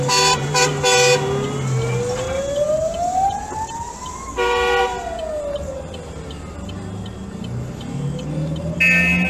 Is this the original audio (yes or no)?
yes